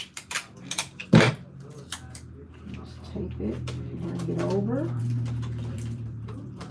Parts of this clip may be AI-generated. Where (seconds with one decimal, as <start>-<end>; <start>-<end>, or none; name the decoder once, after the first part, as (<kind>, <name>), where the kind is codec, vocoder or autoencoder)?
0.0-1.0 (vocoder, BigVGAN v2); 5.0-6.7